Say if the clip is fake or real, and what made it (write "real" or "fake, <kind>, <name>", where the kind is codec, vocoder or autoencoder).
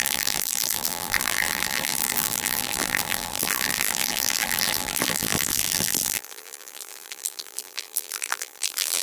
fake, vocoder, BigVGAN v2